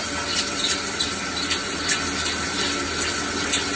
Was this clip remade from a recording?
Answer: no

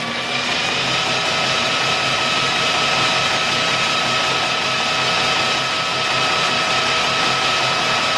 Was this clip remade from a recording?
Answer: no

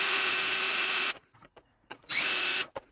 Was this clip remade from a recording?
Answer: yes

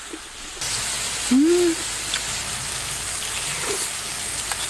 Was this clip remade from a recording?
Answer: no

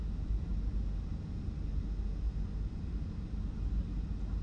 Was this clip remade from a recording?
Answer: no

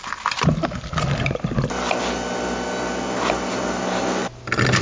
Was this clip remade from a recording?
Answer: no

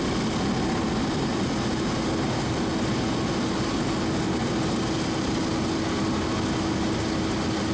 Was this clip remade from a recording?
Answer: no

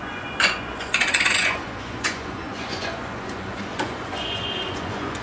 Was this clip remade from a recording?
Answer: yes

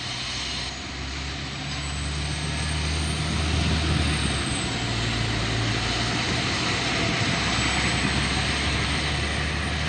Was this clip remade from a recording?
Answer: no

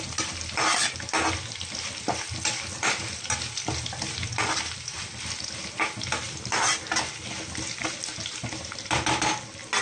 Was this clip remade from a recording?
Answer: no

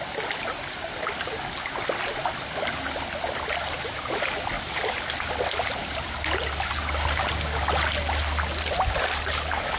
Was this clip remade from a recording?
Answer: no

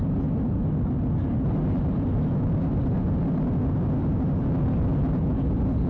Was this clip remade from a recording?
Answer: no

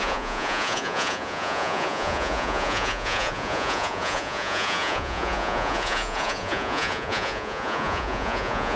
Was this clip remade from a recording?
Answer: yes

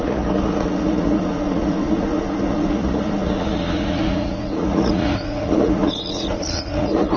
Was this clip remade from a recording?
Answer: yes